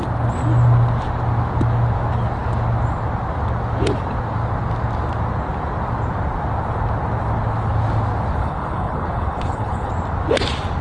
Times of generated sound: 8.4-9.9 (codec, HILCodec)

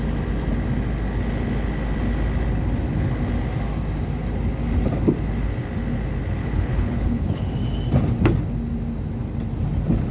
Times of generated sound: 6.4-7.5 (codec, HILCodec)

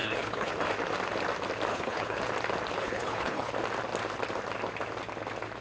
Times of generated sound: 0.0-0.5 (codec, HILCodec); 1.7-2.2; 2.8-3.5